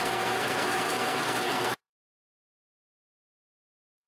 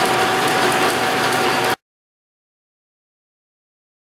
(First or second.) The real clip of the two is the second